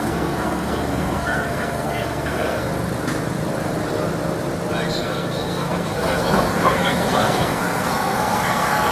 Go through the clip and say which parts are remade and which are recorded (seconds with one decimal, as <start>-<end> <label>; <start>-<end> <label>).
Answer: 0.0-2.7 remade; 2.7-4.9 recorded; 4.9-8.9 remade